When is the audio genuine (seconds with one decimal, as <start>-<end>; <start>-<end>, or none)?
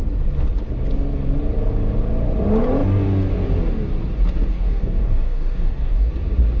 0.0-4.5; 6.1-6.6